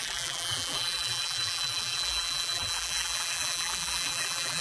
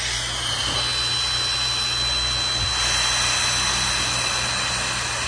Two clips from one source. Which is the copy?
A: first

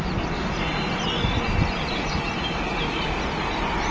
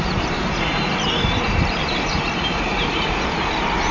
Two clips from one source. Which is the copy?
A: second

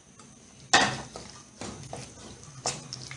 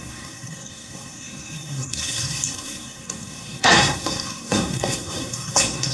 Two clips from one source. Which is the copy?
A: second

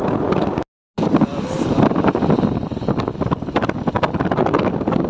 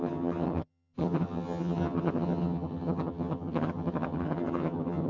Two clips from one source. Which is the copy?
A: second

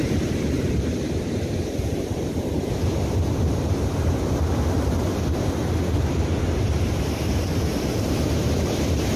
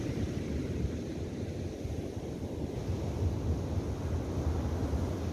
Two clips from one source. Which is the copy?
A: first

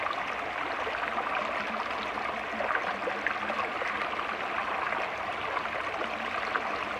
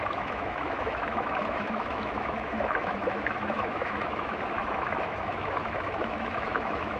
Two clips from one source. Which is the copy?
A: second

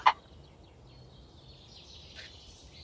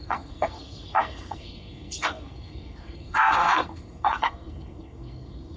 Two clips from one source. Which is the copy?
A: second